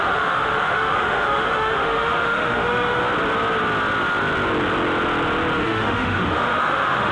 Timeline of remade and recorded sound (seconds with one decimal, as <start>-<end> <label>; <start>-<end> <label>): 0.0-3.0 remade; 3.0-5.6 recorded; 5.6-7.1 remade

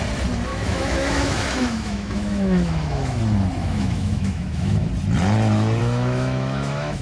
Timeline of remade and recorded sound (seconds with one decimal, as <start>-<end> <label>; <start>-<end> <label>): 0.0-0.5 recorded; 0.5-3.2 remade; 3.2-3.6 recorded; 3.6-4.9 remade; 4.9-5.8 recorded; 5.8-7.0 remade

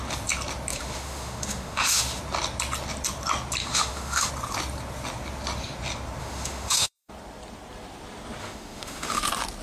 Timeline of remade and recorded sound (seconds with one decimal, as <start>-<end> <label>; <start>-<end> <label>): 0.0-0.7 recorded; 0.7-2.2 remade; 2.2-3.6 recorded; 3.6-4.3 remade; 4.3-6.2 recorded; 6.2-7.1 remade; 7.1-8.4 recorded; 8.4-9.2 remade; 9.2-9.6 recorded

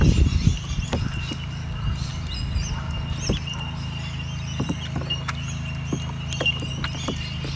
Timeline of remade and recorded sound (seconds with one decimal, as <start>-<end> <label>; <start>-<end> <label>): 0.0-7.6 recorded